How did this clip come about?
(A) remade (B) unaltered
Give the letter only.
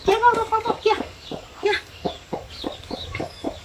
A